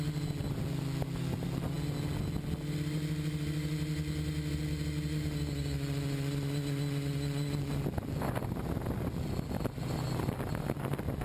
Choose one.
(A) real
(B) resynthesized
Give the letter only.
A